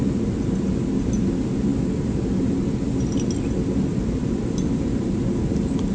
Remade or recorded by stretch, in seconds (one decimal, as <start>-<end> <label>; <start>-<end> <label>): 0.0-5.9 recorded